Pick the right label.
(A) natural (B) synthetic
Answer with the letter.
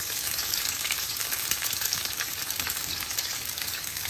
B